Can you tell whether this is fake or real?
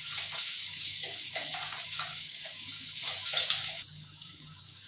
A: fake